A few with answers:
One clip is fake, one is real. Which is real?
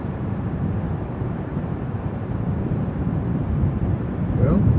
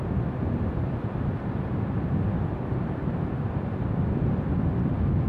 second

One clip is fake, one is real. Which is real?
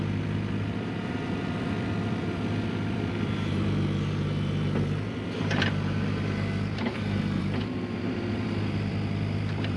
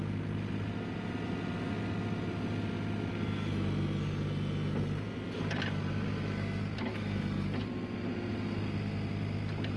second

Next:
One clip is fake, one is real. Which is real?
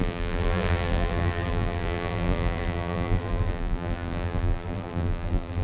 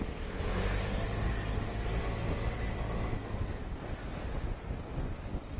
second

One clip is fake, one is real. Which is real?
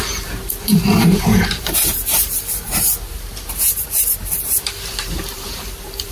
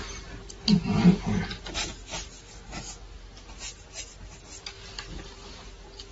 second